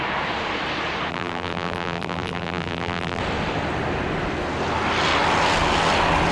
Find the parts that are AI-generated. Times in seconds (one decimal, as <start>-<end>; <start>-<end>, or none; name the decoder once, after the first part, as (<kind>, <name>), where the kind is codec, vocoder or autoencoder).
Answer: 1.1-3.2 (vocoder, BigVGAN v2)